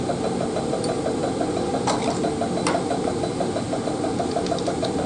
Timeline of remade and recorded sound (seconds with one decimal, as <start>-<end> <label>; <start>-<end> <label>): 0.0-5.1 recorded